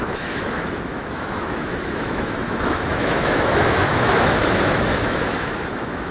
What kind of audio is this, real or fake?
fake